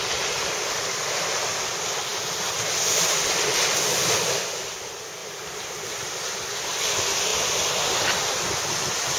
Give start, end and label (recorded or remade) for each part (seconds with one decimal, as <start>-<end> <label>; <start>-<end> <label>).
0.0-5.2 recorded; 5.2-6.4 remade; 6.4-9.2 recorded